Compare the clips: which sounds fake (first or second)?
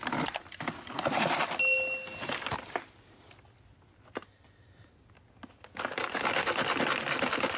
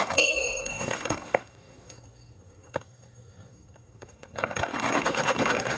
second